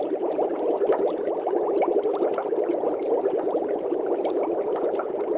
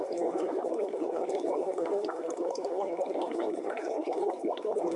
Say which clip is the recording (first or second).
first